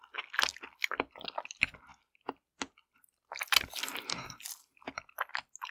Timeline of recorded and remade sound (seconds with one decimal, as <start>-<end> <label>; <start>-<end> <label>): 0.0-5.7 recorded